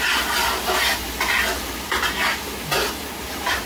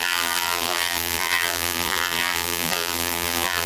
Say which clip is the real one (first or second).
first